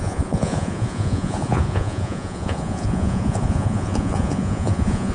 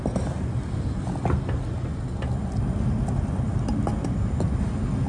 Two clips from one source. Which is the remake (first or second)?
first